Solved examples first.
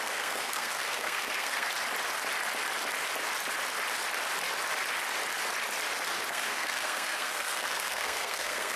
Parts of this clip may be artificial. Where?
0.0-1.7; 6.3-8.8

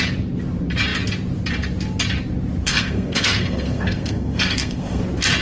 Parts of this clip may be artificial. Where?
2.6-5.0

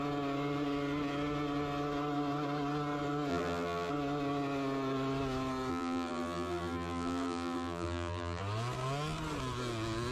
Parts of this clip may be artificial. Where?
3.3-3.9; 5.7-8.4